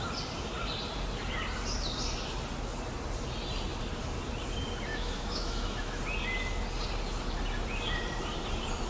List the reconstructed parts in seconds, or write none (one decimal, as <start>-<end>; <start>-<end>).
4.9-6.0